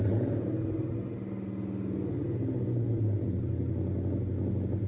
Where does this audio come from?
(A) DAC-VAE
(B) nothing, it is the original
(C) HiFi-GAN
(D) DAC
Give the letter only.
B